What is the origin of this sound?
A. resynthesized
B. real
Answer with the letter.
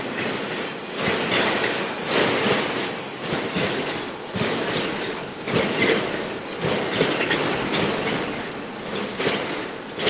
B